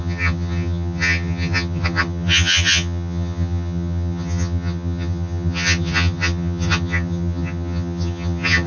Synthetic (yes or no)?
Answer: yes